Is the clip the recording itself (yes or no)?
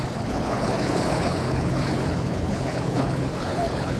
no